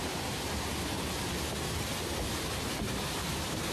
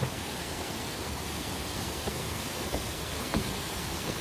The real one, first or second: first